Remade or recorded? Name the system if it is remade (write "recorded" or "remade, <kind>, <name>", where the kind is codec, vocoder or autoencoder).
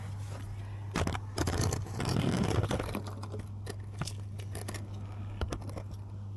recorded